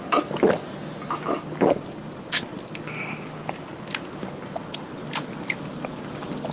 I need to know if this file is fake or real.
real